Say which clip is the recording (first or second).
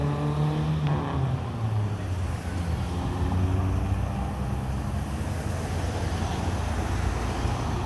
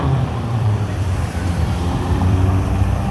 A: first